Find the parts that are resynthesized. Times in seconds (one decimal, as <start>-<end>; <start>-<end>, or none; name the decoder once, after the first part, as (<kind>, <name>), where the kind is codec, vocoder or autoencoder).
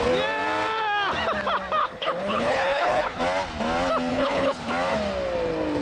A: 1.8-3.2 (codec, HILCodec); 4.1-4.7